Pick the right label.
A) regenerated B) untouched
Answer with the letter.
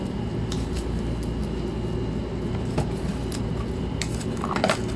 B